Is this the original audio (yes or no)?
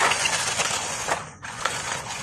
no